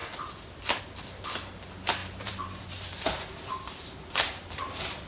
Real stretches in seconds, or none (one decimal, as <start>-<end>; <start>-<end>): 0.0-2.0